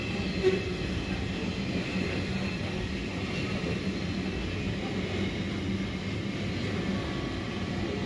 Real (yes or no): yes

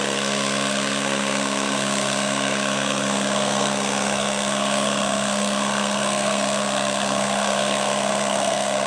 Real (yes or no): no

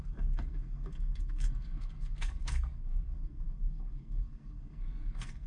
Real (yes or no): no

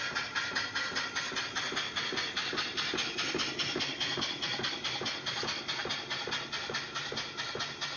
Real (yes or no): yes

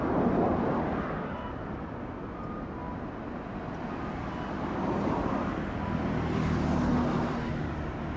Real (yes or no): yes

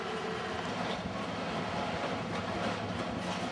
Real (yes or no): yes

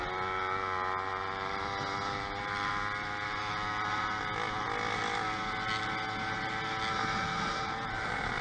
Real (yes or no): yes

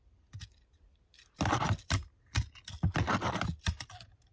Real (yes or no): yes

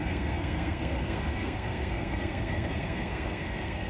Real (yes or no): no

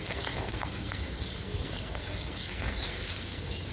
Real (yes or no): no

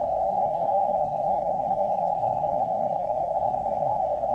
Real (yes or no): no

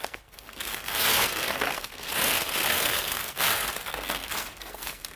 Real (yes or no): no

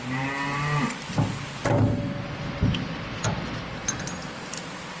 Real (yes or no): yes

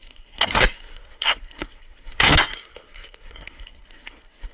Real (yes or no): no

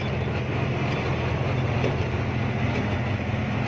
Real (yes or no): yes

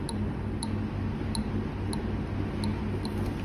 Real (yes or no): yes